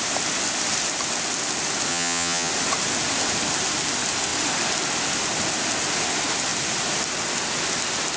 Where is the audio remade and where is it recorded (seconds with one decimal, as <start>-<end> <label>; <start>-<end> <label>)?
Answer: 0.0-1.9 recorded; 1.9-2.5 remade; 2.5-8.2 recorded